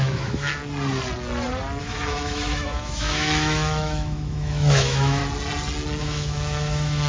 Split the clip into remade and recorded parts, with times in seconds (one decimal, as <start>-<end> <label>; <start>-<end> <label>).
0.0-0.6 remade; 0.6-1.8 recorded; 1.8-5.2 remade; 5.2-6.0 recorded; 6.0-7.1 remade